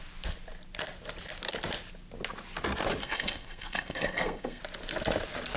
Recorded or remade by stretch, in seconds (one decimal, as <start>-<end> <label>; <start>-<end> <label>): 0.0-3.0 recorded; 3.0-4.6 remade; 4.6-5.6 recorded